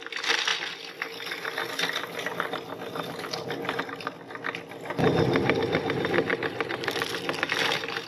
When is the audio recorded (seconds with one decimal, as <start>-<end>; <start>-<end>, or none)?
0.0-8.1